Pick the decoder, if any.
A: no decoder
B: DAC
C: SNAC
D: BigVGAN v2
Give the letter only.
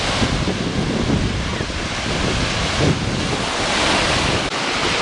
A